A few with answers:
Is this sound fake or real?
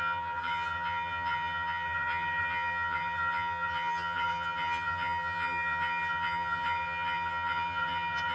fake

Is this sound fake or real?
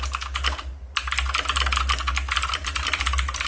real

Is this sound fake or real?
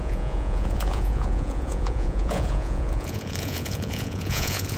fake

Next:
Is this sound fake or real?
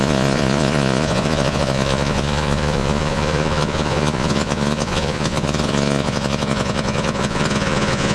fake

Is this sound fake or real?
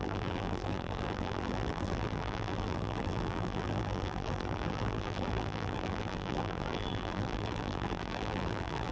fake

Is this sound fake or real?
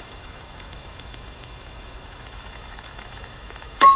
fake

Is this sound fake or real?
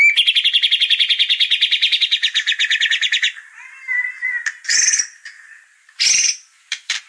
real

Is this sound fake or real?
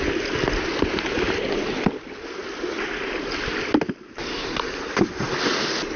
real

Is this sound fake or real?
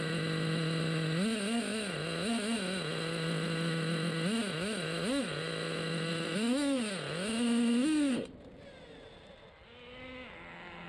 real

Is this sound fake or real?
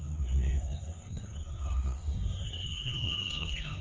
fake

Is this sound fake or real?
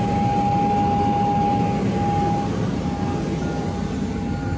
real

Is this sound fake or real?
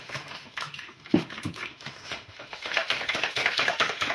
fake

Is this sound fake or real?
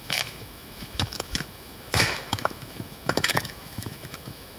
fake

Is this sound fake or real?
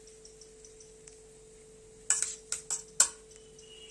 real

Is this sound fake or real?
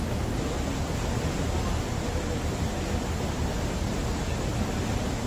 real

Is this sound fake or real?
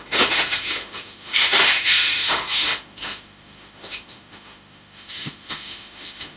fake